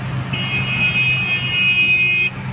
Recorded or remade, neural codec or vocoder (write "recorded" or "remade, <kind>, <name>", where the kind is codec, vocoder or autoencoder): recorded